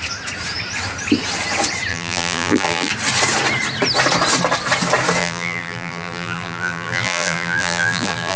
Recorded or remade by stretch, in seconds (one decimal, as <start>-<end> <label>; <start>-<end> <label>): 0.0-1.9 recorded; 1.9-2.9 remade; 2.9-5.2 recorded; 5.2-8.4 remade